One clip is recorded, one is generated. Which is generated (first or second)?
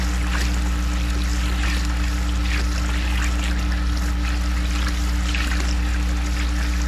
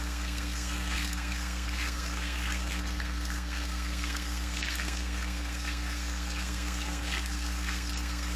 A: second